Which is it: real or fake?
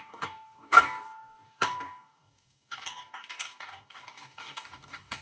fake